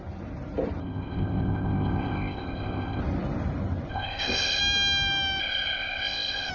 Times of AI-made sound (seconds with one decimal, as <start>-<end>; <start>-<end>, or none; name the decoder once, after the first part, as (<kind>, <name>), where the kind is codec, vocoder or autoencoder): 0.8-3.0 (codec, ZipCodec); 3.9-4.6; 5.4-6.5